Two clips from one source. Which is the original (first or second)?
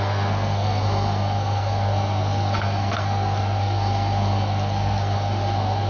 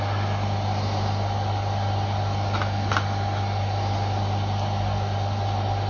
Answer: second